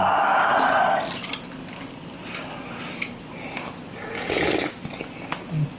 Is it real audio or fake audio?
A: real